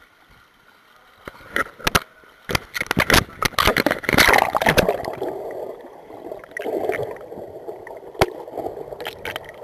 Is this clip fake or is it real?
real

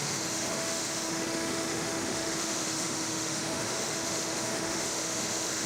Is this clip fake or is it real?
fake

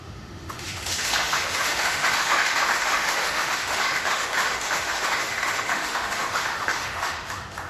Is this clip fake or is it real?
fake